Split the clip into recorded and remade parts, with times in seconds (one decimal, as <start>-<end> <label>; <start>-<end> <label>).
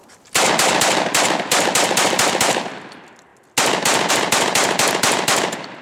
0.0-5.8 recorded